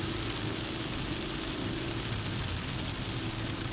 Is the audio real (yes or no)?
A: yes